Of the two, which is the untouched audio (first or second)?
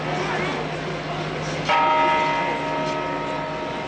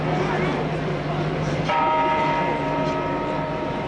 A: first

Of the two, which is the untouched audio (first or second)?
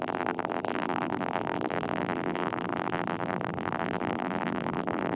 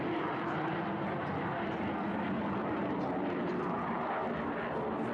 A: second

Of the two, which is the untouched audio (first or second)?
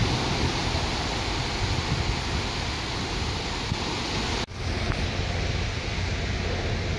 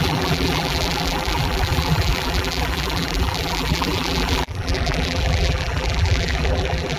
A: first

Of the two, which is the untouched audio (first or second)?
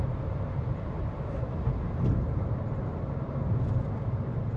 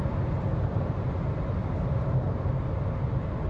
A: second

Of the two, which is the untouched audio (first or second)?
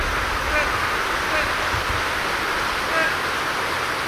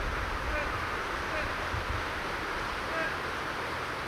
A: first